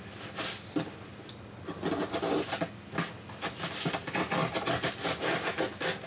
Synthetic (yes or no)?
no